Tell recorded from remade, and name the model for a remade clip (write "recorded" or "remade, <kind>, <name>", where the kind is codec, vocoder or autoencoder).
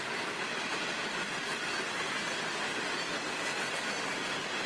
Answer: recorded